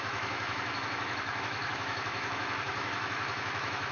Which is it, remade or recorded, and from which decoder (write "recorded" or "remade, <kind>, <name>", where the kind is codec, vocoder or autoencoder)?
remade, autoencoder, DAC-VAE